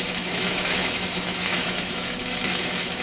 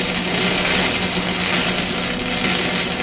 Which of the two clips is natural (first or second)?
second